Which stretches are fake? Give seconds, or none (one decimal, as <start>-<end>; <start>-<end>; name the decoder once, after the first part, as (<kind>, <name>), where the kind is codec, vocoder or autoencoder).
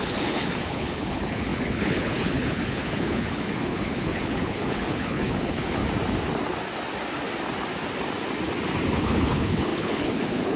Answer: 0.0-5.8 (codec, HILCodec); 8.9-10.6